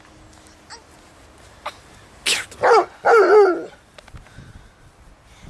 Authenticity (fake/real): real